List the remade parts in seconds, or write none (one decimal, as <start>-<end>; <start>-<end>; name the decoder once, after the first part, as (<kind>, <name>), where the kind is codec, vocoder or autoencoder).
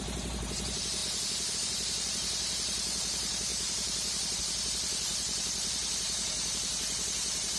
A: 0.0-1.0 (vocoder, BigVGAN v2); 1.5-7.6